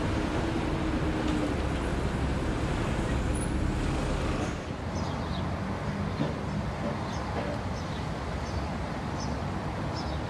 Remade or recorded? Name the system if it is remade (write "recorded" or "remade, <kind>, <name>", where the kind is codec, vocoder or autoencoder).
recorded